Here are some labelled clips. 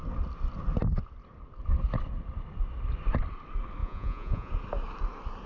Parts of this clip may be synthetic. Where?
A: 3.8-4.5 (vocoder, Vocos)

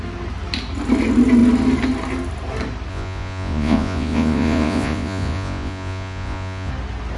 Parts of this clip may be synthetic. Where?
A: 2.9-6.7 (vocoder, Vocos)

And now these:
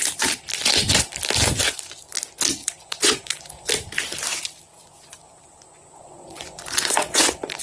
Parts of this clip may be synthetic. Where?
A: 2.6-3.7 (vocoder, Vocos); 4.7-7.6

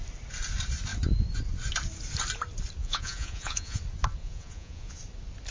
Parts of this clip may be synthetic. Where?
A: 2.8-3.8 (vocoder, Vocos); 4.2-5.0

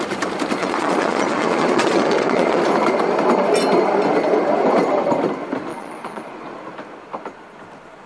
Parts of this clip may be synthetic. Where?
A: 0.6-2.6 (vocoder, Vocos); 5.7-6.3